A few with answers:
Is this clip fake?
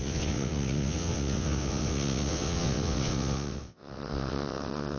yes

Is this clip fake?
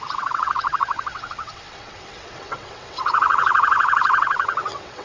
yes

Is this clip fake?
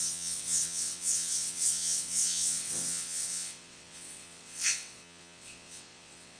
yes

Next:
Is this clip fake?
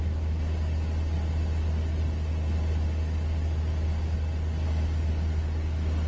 no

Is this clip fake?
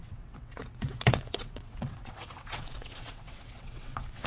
yes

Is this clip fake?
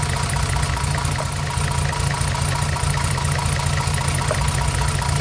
no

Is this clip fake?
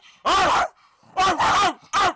no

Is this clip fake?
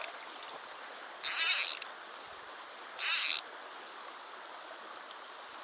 no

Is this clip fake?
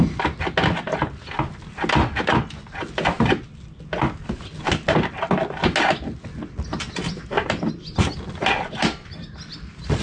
no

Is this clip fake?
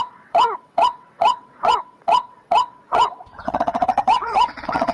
yes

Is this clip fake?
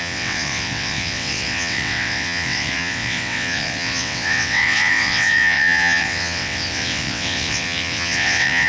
yes